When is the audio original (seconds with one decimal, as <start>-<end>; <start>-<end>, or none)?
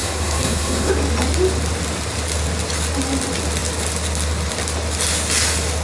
0.9-5.8